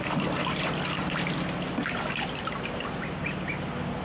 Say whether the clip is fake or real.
real